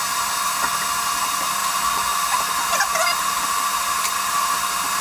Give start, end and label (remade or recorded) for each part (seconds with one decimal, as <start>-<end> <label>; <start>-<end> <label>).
0.0-5.0 recorded